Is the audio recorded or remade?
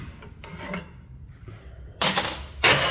recorded